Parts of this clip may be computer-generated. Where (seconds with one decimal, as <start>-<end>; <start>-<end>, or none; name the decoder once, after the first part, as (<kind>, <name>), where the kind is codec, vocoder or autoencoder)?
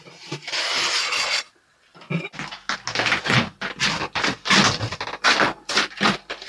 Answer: 1.0-1.5 (codec, HILCodec)